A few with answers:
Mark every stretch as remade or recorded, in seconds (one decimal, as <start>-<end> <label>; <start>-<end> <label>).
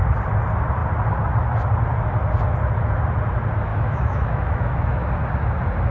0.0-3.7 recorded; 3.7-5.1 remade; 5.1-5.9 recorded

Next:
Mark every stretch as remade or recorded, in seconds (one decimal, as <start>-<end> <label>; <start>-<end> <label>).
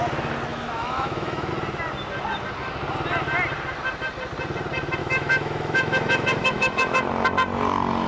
0.0-0.5 recorded; 0.5-1.5 remade; 1.5-5.0 recorded; 5.0-7.1 remade; 7.1-8.1 recorded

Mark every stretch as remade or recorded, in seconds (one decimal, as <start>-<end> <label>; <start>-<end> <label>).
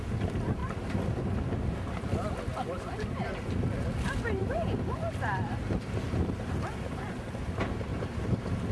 0.0-8.7 recorded